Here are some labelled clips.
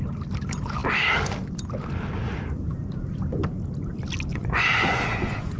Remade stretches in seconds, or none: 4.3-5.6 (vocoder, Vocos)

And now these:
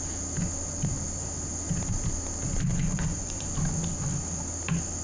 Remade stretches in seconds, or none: 2.7-3.5 (vocoder, Vocos)